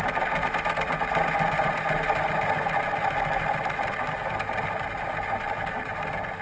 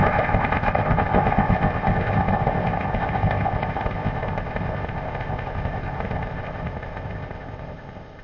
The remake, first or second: second